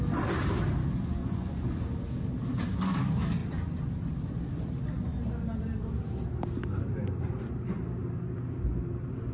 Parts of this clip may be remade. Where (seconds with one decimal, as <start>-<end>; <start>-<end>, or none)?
1.2-1.8